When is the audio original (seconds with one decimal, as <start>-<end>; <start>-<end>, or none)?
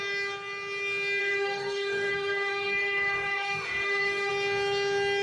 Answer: 0.0-1.2; 4.3-5.2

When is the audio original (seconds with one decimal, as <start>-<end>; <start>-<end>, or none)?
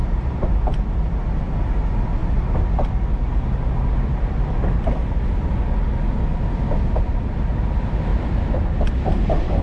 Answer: 0.9-8.1; 9.2-9.6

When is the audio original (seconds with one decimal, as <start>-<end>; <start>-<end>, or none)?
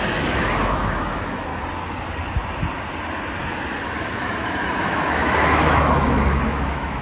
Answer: 1.5-3.8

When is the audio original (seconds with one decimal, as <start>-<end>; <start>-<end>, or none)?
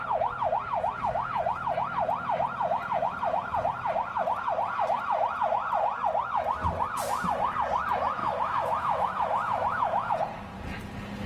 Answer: 0.0-8.2; 10.1-11.3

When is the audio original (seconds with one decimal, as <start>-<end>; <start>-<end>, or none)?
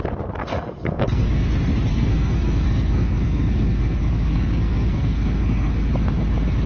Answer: 0.0-0.4; 1.5-1.9; 5.9-6.7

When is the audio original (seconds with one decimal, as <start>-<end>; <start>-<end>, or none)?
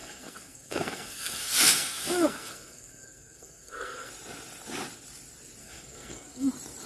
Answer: 4.1-5.6; 6.5-6.9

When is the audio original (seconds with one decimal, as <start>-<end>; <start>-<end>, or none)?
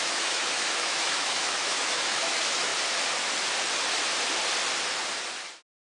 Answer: 2.7-5.9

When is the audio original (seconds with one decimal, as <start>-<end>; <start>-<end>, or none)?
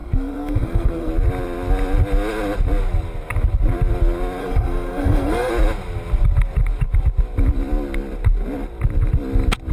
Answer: 1.1-4.4; 5.5-9.7